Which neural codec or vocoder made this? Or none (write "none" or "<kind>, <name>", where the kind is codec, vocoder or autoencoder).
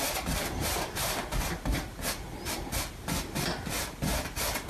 none